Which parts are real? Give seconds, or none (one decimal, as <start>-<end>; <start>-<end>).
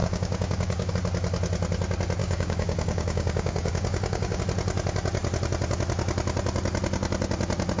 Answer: 0.9-2.2; 4.4-7.8